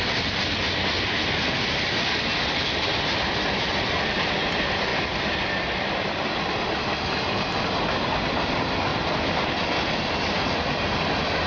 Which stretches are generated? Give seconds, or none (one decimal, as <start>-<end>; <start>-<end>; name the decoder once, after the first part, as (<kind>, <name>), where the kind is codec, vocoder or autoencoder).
none

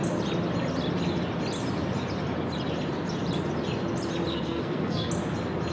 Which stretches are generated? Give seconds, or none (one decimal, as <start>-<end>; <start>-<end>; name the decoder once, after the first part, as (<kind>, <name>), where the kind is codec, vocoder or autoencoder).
4.3-5.1 (codec, SNAC)

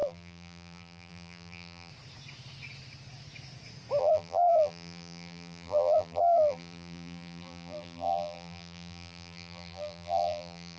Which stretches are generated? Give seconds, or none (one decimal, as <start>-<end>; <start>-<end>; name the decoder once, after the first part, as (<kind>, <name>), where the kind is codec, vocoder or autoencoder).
0.0-1.9 (vocoder, BigVGAN v2); 4.0-10.8

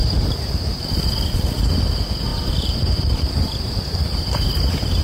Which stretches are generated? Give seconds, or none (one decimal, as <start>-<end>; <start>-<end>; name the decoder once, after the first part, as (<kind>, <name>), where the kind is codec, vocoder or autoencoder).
2.3-5.0 (vocoder, BigVGAN v2)